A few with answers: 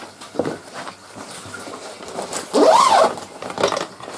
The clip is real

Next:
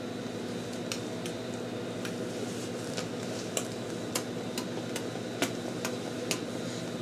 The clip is real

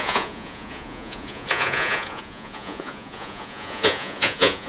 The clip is fake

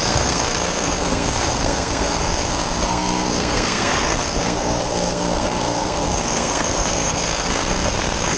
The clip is fake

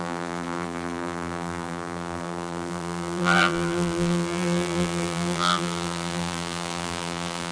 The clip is fake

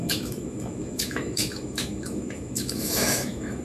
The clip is fake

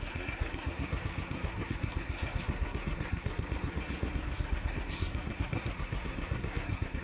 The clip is fake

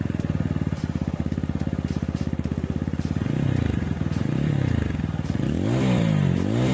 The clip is real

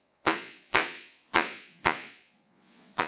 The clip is fake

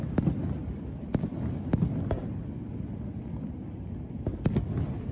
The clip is real